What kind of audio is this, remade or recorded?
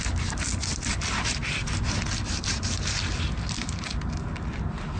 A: recorded